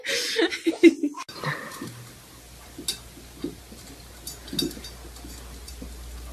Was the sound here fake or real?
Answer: real